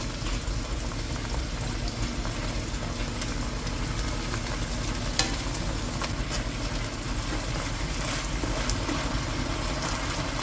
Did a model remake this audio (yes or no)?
no